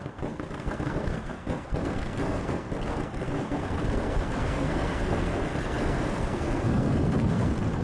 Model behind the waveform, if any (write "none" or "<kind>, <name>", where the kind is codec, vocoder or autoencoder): codec, SNAC